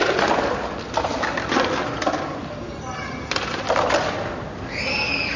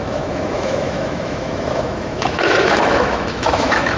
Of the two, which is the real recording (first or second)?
first